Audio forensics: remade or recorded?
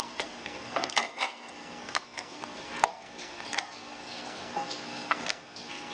remade